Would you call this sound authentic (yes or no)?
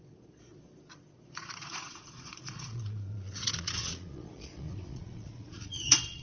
no